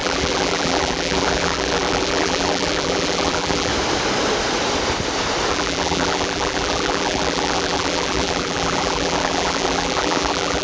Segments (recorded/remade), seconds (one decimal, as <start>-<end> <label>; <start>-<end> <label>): 0.0-3.7 remade; 3.7-5.5 recorded; 5.5-10.6 remade